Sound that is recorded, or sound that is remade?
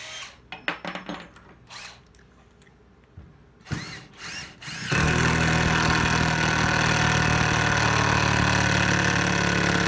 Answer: recorded